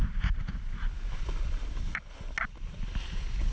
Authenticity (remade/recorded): recorded